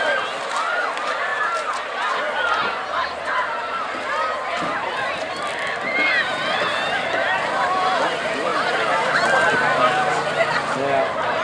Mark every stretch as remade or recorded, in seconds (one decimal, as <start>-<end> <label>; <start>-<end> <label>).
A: 0.0-11.4 recorded